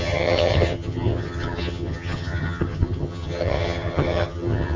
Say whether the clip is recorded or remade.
remade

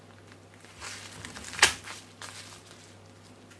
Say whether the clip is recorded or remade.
recorded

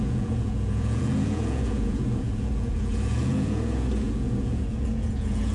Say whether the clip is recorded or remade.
remade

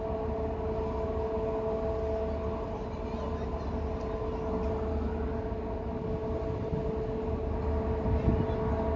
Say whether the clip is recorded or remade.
recorded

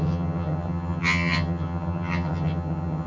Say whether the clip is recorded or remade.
remade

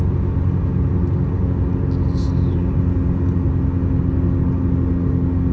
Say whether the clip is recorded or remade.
recorded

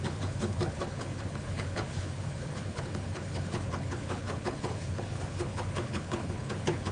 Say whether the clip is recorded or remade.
remade